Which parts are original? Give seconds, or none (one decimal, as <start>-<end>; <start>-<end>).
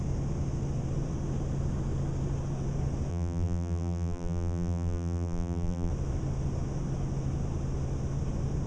0.0-3.1; 5.9-8.7